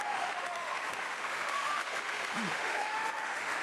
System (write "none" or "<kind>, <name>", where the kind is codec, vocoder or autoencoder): autoencoder, DAC-VAE